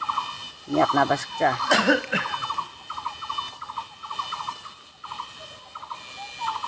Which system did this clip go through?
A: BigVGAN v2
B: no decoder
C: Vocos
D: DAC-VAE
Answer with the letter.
B